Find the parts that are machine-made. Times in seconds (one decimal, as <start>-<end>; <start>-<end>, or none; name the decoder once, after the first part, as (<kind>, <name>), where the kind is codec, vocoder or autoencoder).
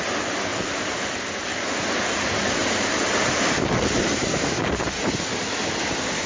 0.5-1.1 (vocoder, BigVGAN v2); 2.6-4.6